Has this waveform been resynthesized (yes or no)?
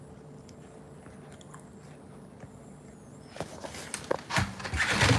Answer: no